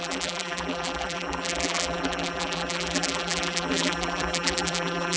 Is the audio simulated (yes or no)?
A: yes